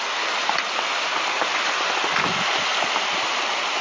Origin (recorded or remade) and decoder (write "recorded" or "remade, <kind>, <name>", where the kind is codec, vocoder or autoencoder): recorded